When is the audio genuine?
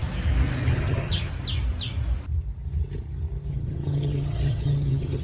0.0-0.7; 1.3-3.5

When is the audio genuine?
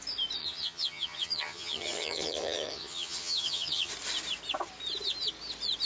0.0-0.4; 3.9-5.9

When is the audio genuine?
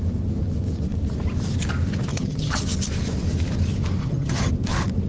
0.0-2.1; 2.6-4.0; 4.5-5.1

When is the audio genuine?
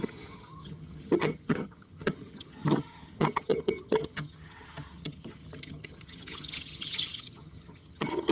none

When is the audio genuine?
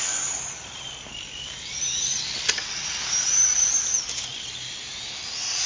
0.0-5.7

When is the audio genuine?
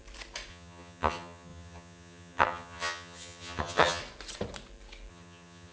0.0-0.5; 4.0-5.1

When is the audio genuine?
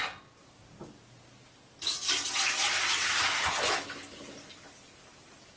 0.0-5.6